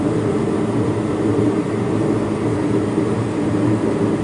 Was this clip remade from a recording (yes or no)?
no